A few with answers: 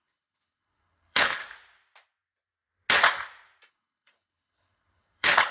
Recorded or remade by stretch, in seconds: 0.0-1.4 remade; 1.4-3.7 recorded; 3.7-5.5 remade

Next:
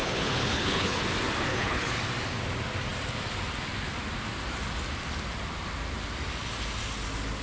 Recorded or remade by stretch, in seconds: 0.0-1.0 remade; 1.0-1.5 recorded; 1.5-2.0 remade; 2.0-7.4 recorded